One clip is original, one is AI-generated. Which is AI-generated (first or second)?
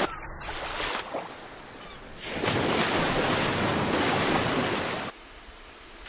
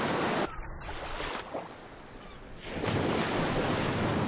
second